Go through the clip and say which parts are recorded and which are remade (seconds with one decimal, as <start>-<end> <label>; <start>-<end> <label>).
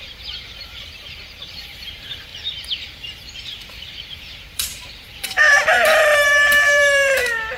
0.0-2.3 remade; 2.3-4.1 recorded; 4.1-7.6 remade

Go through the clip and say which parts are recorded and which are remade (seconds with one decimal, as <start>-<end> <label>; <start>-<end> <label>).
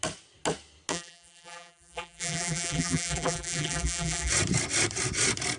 0.0-0.9 recorded; 0.9-4.3 remade; 4.3-5.6 recorded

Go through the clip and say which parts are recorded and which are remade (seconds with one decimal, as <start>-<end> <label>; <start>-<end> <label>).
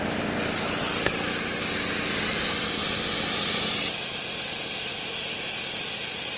0.0-2.8 recorded; 2.8-4.9 remade; 4.9-6.4 recorded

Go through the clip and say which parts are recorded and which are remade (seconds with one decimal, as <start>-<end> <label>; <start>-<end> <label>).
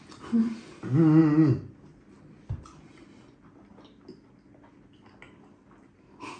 0.0-6.4 recorded